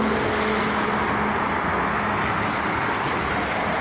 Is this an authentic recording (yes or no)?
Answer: yes